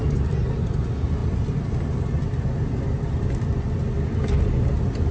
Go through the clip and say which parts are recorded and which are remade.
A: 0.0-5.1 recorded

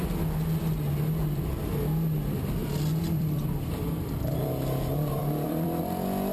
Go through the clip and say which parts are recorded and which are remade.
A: 0.0-2.6 recorded; 2.6-4.5 remade; 4.5-5.2 recorded; 5.2-5.8 remade; 5.8-6.3 recorded

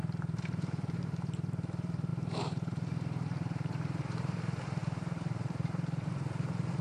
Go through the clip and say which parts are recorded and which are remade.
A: 0.0-6.8 remade